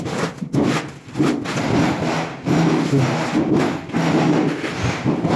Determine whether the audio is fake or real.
real